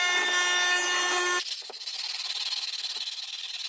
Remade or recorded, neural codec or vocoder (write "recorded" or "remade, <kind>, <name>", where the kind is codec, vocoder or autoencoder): recorded